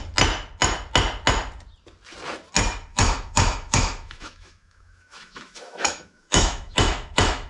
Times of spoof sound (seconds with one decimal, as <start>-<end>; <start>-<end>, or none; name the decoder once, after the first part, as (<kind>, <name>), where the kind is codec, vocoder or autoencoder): 2.9-7.5 (autoencoder, DAC-VAE)